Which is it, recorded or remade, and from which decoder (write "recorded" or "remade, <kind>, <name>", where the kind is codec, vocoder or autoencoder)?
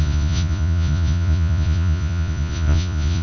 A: remade, vocoder, Vocos